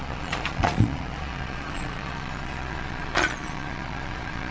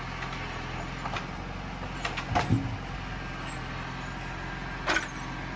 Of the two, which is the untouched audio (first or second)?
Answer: second